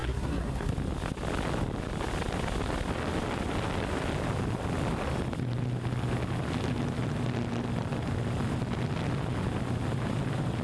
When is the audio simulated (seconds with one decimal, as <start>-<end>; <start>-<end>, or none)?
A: 0.0-0.7